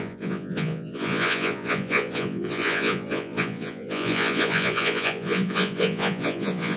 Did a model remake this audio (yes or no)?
yes